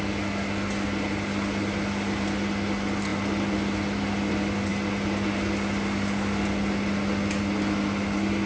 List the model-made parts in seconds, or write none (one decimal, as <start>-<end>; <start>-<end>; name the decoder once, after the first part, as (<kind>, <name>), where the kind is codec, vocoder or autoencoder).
none